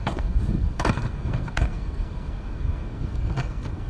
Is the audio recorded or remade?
remade